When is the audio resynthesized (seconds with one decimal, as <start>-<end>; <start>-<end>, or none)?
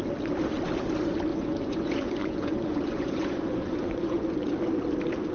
1.3-4.5